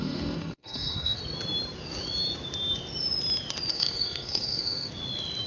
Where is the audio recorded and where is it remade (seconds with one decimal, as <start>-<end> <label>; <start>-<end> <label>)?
0.0-1.2 remade; 1.2-3.7 recorded; 3.7-4.9 remade; 4.9-5.5 recorded